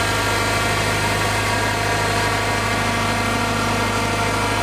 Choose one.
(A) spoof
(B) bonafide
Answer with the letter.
B